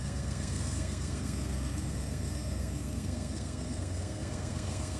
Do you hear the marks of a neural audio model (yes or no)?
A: yes